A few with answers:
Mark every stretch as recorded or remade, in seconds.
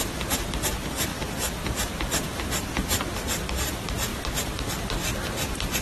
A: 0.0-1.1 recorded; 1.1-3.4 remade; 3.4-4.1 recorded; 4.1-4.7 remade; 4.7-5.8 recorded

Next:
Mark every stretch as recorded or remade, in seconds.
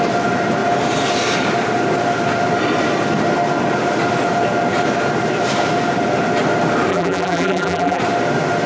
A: 0.0-6.9 recorded; 6.9-8.0 remade; 8.0-8.7 recorded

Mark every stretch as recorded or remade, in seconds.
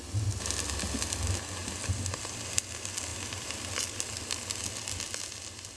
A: 0.0-1.6 recorded; 1.6-2.2 remade; 2.2-3.1 recorded; 3.1-4.6 remade; 4.6-5.8 recorded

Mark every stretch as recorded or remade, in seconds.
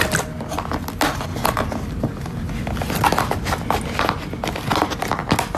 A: 0.0-1.3 recorded; 1.3-4.0 remade; 4.0-5.6 recorded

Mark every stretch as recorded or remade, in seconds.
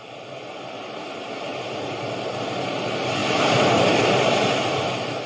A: 0.0-3.2 recorded; 3.2-3.8 remade; 3.8-5.3 recorded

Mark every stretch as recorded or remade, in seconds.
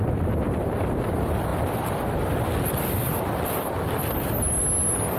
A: 0.0-5.2 recorded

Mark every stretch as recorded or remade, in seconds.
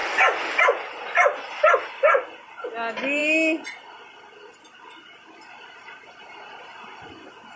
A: 0.0-7.6 recorded